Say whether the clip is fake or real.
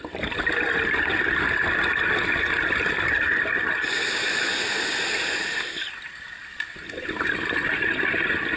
real